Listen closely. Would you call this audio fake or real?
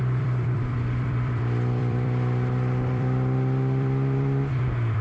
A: fake